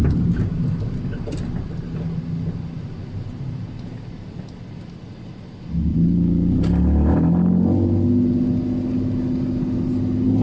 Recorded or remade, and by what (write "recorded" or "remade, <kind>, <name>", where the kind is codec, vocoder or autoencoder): recorded